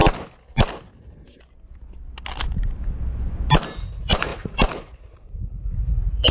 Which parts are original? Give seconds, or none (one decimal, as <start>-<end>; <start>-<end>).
0.0-3.8